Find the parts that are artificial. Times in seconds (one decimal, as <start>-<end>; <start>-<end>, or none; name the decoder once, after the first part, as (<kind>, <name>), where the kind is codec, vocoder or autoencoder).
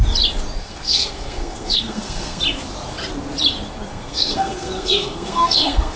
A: 0.6-2.4 (codec, SNAC); 3.9-6.0